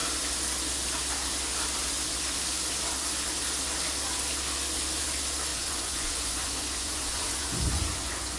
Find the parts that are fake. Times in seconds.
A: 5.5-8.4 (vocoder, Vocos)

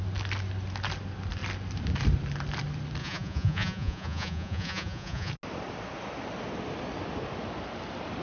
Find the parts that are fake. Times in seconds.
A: 3.0-5.3 (vocoder, Vocos)

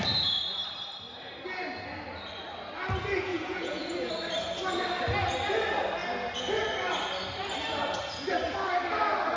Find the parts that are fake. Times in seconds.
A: 3.3-4.1 (vocoder, Vocos)

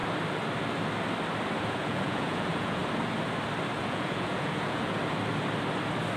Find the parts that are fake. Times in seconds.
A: 1.6-2.8 (vocoder, Vocos); 3.8-5.0

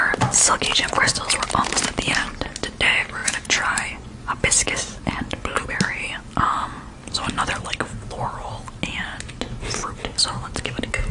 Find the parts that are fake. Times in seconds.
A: 0.7-1.4 (vocoder, Vocos); 3.2-5.7